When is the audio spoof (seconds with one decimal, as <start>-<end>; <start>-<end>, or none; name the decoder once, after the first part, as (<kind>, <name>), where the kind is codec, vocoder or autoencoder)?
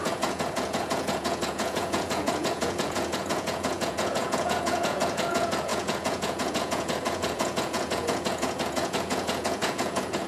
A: 0.0-10.3 (vocoder, Vocos)